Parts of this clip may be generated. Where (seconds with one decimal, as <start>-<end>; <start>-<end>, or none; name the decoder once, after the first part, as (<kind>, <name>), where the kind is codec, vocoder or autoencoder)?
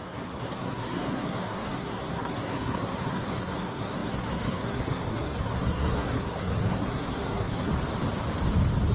0.0-7.7 (codec, SNAC)